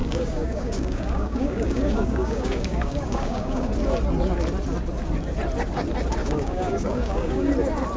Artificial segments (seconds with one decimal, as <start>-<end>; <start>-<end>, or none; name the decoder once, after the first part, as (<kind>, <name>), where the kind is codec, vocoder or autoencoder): 0.0-3.7 (codec, DAC); 6.2-7.5